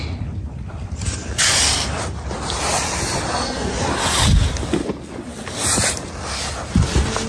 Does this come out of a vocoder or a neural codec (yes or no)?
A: no